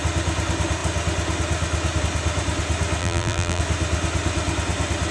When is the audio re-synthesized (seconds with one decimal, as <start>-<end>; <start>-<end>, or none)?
3.0-3.6